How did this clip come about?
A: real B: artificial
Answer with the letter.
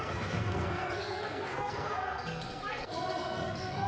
B